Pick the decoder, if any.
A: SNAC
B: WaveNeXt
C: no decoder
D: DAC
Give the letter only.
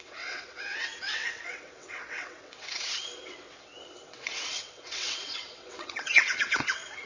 B